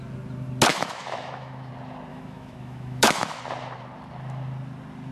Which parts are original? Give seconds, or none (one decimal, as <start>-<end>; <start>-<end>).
0.0-0.7; 1.7-2.1; 3.4-5.1